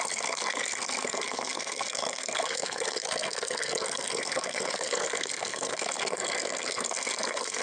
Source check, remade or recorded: remade